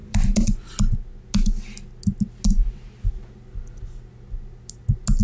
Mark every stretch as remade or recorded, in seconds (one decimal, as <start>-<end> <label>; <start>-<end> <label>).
0.0-5.2 recorded